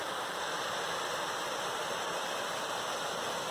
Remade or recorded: recorded